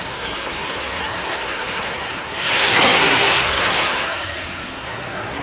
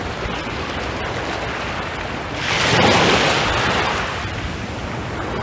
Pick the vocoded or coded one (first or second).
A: first